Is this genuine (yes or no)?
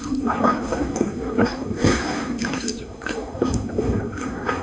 no